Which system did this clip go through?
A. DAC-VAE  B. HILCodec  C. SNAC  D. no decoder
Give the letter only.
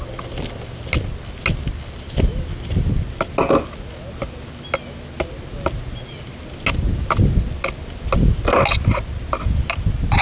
D